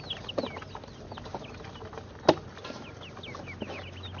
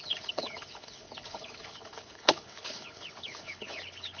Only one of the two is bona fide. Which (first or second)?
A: first